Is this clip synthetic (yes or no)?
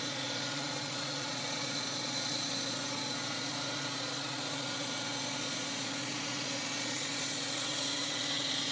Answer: yes